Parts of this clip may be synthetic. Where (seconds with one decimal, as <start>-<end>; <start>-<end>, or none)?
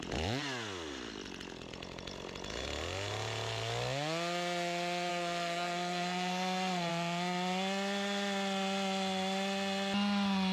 5.1-6.9